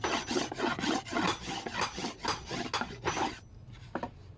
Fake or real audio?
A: real